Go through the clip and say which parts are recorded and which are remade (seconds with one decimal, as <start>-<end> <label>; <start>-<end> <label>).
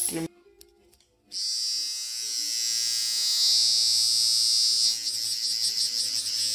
0.0-6.5 recorded